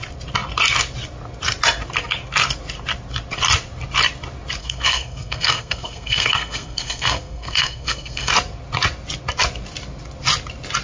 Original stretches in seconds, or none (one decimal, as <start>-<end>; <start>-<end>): 0.0-4.6; 8.3-10.8